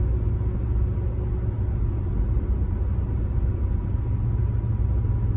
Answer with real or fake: real